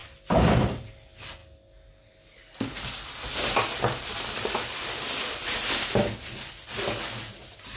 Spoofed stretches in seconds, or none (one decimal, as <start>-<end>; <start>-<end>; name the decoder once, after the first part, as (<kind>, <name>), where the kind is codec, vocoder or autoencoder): none